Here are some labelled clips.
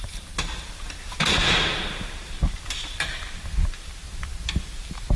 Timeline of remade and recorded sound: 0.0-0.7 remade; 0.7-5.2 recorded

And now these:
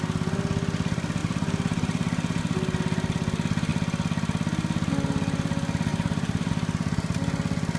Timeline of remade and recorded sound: 0.0-1.2 recorded; 1.2-2.4 remade; 2.4-5.9 recorded; 5.9-6.5 remade; 6.5-7.8 recorded

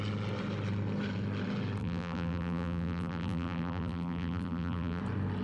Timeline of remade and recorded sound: 0.0-1.8 recorded; 1.8-5.0 remade; 5.0-5.4 recorded

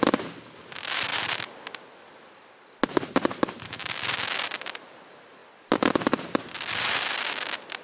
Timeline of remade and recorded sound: 0.0-5.4 recorded; 5.4-6.4 remade; 6.4-7.8 recorded

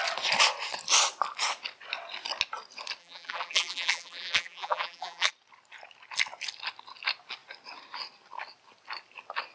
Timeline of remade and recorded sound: 0.0-3.0 recorded; 3.0-5.3 remade; 5.3-9.5 recorded

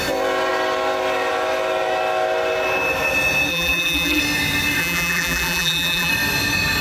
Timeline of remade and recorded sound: 0.0-3.5 recorded; 3.5-4.2 remade; 4.2-4.8 recorded; 4.8-6.1 remade; 6.1-6.8 recorded

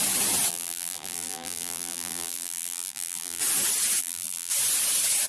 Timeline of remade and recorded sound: 0.0-0.5 recorded; 0.5-3.4 remade; 3.4-4.0 recorded; 4.0-4.5 remade; 4.5-5.3 recorded

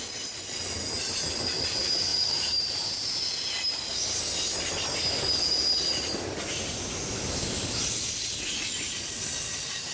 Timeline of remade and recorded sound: 0.0-2.1 recorded; 2.1-3.1 remade; 3.1-9.9 recorded